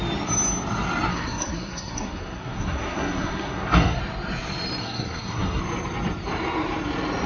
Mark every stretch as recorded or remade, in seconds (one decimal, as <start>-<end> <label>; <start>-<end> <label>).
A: 0.0-1.1 recorded; 1.1-4.0 remade; 4.0-4.8 recorded; 4.8-5.6 remade; 5.6-7.3 recorded